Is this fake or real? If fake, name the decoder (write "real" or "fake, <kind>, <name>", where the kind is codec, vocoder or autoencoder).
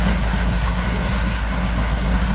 fake, codec, SNAC